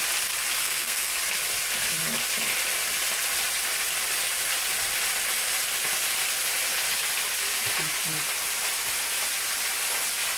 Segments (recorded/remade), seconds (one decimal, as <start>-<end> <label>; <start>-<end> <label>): 0.0-0.6 recorded; 0.6-1.1 remade; 1.1-10.4 recorded